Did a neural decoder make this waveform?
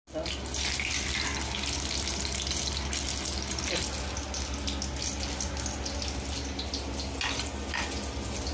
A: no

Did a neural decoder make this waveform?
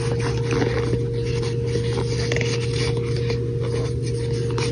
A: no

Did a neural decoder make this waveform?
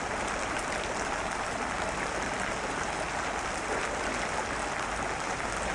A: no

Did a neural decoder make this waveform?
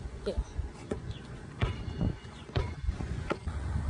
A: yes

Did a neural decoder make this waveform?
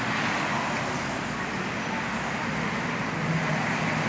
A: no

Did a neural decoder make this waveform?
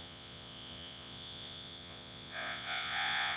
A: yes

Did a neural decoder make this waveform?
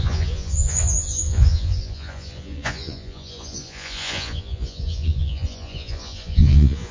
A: yes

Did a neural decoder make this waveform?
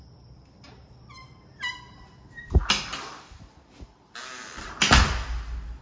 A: no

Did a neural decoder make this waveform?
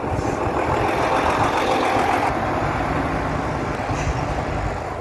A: no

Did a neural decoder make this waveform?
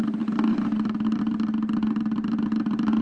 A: no